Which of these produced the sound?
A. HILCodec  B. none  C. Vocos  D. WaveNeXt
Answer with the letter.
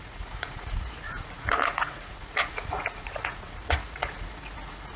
C